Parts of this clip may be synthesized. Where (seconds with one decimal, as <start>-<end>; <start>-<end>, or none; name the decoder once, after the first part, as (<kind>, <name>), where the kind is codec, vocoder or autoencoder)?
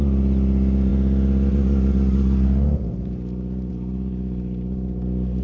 none